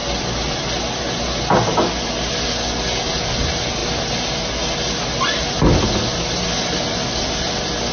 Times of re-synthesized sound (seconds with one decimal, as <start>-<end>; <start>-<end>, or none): none